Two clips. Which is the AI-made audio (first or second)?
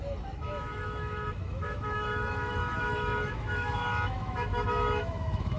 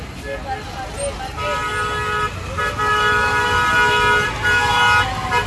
first